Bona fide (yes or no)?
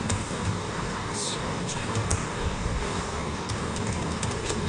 no